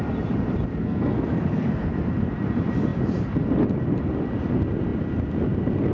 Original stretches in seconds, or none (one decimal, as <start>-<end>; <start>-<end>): 0.0-0.7; 1.9-5.9